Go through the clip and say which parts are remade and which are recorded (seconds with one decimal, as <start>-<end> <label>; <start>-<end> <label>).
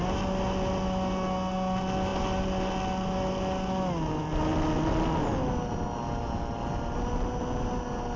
0.0-8.2 recorded